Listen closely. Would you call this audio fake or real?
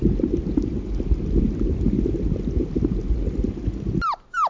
real